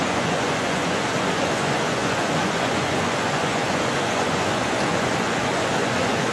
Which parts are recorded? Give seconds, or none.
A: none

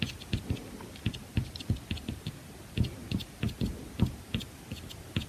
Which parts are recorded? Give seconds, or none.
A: 0.0-5.3

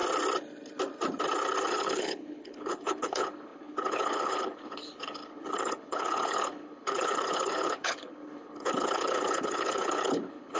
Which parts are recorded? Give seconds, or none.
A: 0.0-1.7

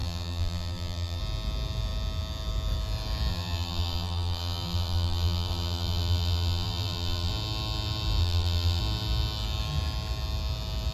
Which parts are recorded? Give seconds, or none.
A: 1.2-3.3; 7.3-8.2; 8.8-10.9

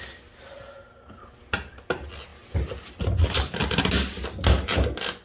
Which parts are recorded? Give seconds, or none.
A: 0.0-5.2

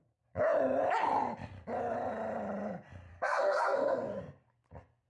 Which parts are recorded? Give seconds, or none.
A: 0.0-3.1; 4.2-5.1